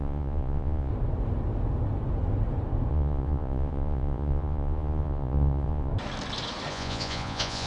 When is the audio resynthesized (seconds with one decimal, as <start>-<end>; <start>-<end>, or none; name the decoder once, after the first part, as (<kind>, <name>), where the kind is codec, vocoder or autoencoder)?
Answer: 0.0-0.9 (vocoder, Vocos); 2.9-5.9; 6.7-7.7

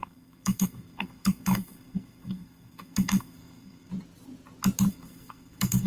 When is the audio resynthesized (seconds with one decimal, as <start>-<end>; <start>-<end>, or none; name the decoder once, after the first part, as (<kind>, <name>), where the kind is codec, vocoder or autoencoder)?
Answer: 0.0-3.9 (codec, SNAC); 4.9-5.9